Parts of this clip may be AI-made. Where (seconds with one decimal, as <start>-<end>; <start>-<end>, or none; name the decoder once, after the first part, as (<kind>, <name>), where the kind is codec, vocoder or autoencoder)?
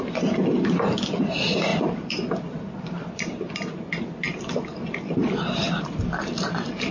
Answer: none